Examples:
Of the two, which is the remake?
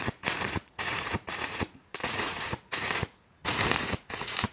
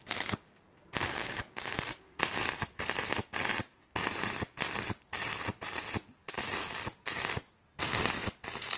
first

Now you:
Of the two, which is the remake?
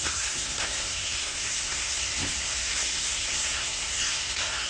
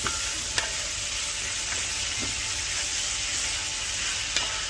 first